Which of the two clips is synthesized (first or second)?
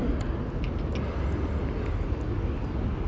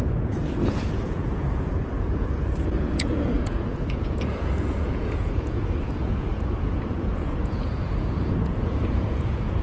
second